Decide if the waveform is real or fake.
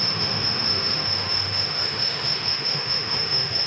fake